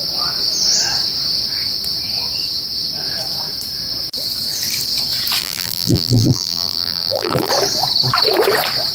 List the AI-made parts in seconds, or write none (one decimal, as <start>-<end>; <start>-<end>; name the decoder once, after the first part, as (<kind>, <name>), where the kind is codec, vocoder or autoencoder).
5.4-7.5 (vocoder, BigVGAN v2)